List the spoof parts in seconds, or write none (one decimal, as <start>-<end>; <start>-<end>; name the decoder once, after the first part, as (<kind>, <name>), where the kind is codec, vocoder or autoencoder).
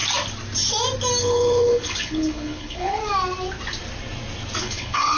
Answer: 1.2-3.0 (codec, HILCodec); 4.6-5.2